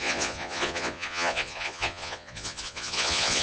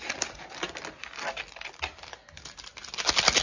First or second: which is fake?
first